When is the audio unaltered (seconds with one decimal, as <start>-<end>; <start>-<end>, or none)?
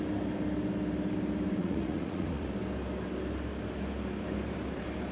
0.0-1.6; 2.5-5.1